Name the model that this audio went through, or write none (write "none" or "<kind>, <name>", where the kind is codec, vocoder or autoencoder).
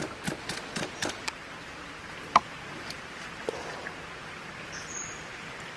none